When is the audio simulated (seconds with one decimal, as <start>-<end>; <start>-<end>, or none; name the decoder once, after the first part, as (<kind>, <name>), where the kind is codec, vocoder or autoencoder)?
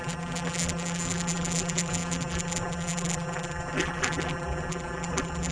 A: 0.0-5.5 (vocoder, BigVGAN v2)